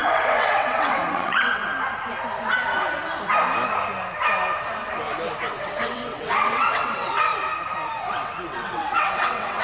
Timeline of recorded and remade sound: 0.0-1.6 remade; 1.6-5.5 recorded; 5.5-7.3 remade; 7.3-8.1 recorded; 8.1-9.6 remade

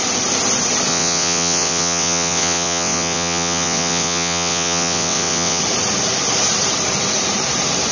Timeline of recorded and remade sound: 0.0-0.9 recorded; 0.9-5.6 remade; 5.6-7.9 recorded

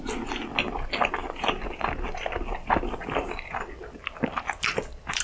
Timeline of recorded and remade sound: 0.0-5.2 recorded